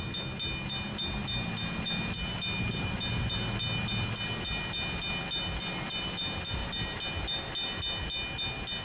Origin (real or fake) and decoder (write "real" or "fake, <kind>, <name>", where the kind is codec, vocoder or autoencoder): real